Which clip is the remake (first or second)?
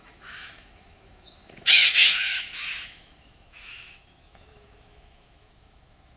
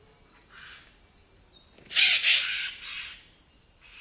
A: first